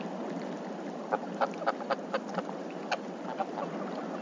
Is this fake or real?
real